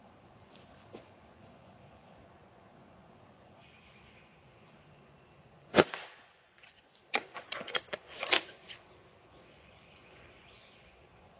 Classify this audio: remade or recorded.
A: remade